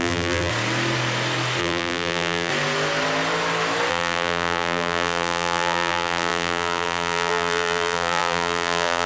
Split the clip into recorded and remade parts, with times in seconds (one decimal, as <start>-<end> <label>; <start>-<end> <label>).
0.0-0.5 remade; 0.5-1.6 recorded; 1.6-2.5 remade; 2.5-3.9 recorded; 3.9-9.1 remade